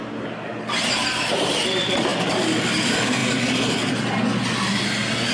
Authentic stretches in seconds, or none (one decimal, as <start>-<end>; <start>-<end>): 0.0-5.3